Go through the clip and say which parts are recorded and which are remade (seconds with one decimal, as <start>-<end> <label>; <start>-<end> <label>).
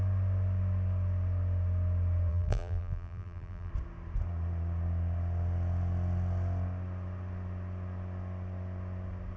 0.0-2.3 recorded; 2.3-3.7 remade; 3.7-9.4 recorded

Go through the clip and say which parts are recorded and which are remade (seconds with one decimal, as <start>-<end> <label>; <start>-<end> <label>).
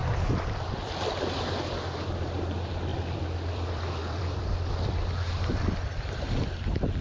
0.0-2.9 recorded; 2.9-4.7 remade; 4.7-7.0 recorded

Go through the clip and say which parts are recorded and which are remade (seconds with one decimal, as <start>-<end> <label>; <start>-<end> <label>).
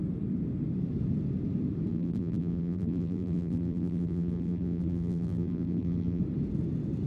0.0-1.9 recorded; 1.9-6.2 remade; 6.2-7.1 recorded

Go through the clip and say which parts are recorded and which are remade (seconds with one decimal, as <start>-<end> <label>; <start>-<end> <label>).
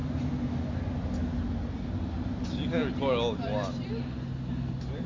0.0-5.1 recorded